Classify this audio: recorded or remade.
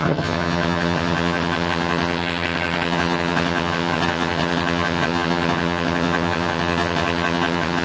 remade